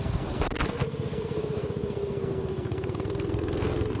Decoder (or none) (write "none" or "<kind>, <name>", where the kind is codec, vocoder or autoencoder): codec, SNAC